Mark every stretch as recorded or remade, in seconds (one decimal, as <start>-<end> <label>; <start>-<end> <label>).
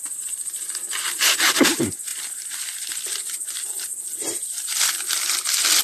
0.0-5.8 recorded